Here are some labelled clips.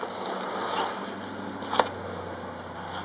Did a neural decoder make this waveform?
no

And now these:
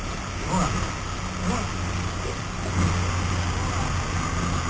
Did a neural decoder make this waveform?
no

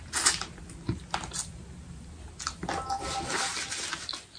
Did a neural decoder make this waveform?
no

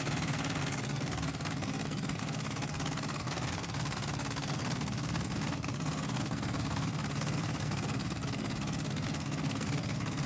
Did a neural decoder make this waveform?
yes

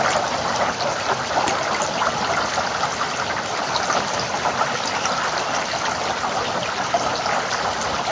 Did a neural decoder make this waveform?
no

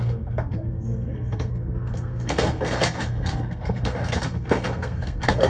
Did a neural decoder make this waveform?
yes